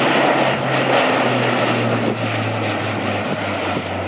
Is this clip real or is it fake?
real